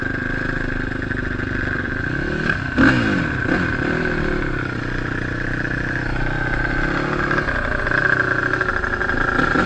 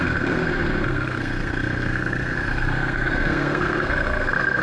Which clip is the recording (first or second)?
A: first